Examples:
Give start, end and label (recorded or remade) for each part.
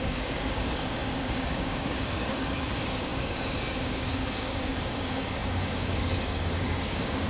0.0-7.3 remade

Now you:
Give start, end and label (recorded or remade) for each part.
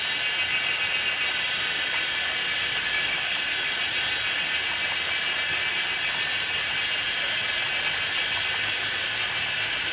0.0-2.6 recorded; 2.6-3.4 remade; 3.4-9.9 recorded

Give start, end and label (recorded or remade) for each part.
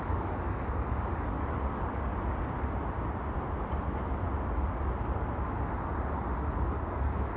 0.0-2.1 remade; 2.1-6.5 recorded; 6.5-7.4 remade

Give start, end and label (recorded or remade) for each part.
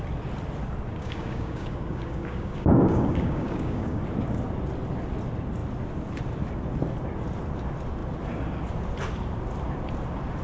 0.0-0.9 recorded; 0.9-4.0 remade; 4.0-10.4 recorded